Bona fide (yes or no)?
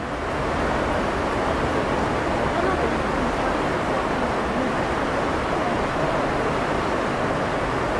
yes